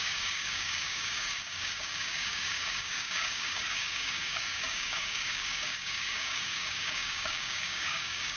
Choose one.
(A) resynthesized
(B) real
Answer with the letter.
A